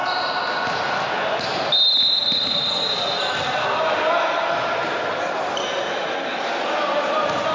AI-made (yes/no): no